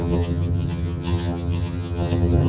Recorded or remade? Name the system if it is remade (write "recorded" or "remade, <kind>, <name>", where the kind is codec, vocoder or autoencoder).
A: remade, vocoder, HiFi-GAN